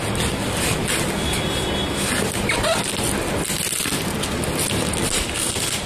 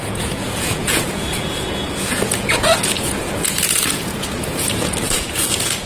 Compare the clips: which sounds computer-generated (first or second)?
second